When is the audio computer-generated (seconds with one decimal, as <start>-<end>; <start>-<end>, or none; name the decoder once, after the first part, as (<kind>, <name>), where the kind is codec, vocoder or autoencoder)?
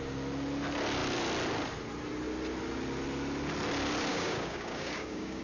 4.1-5.4 (codec, DAC)